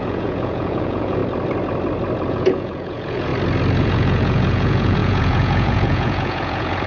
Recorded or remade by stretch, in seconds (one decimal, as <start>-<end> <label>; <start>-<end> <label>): 0.0-1.2 remade; 1.2-2.3 recorded; 2.3-3.3 remade; 3.3-3.8 recorded; 3.8-6.9 remade